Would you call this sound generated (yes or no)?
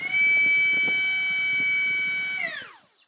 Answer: no